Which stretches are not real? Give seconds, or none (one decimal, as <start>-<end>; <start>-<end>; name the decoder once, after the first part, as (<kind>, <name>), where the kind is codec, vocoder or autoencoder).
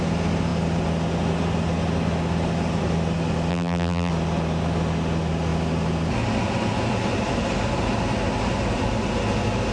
3.5-4.1 (vocoder, BigVGAN v2)